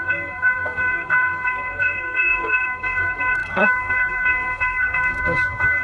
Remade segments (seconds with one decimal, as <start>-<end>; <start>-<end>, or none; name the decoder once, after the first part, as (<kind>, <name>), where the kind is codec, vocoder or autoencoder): 0.0-5.8 (codec, SNAC)